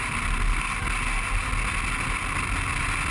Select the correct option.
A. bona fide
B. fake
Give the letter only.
A